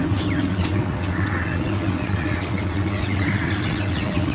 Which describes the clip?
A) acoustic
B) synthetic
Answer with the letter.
B